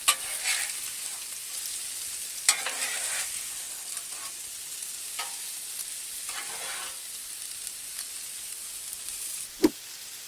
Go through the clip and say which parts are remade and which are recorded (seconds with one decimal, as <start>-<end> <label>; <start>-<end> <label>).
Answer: 0.0-10.3 recorded